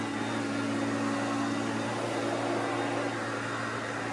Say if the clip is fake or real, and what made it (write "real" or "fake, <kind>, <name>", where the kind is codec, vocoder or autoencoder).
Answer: real